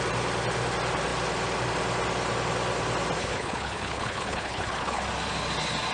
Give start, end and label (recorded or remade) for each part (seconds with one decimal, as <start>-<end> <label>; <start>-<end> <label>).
0.0-3.2 recorded; 3.2-5.0 remade; 5.0-5.9 recorded